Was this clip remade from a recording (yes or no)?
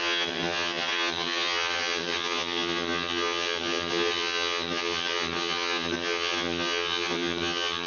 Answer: yes